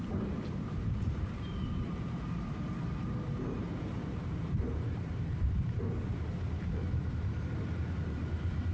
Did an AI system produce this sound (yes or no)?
yes